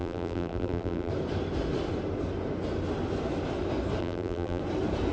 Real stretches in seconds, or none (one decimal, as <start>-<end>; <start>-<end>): 1.1-4.0; 4.6-5.1